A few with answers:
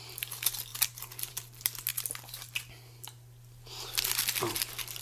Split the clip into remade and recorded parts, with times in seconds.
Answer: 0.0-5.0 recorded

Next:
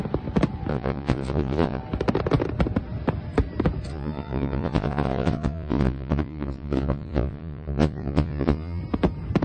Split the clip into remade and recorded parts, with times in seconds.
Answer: 0.0-0.7 recorded; 0.7-1.8 remade; 1.8-3.9 recorded; 3.9-8.8 remade; 8.8-9.4 recorded

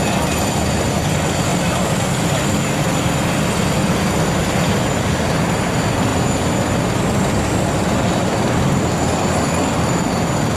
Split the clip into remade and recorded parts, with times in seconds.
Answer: 0.0-10.6 recorded

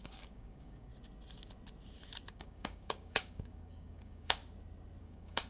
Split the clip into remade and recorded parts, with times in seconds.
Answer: 0.0-0.9 remade; 0.9-2.3 recorded; 2.3-4.4 remade; 4.4-5.0 recorded; 5.0-5.5 remade

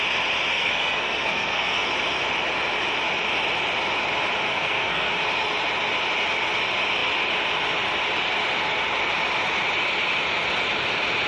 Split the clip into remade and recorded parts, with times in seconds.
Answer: 0.0-0.5 recorded; 0.5-1.9 remade; 1.9-4.5 recorded; 4.5-5.1 remade; 5.1-11.3 recorded